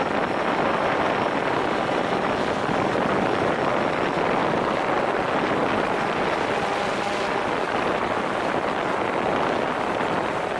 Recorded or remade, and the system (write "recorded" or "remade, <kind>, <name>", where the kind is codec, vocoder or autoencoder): recorded